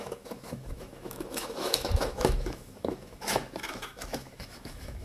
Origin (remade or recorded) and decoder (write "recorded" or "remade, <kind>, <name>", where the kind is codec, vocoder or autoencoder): remade, autoencoder, DAC-VAE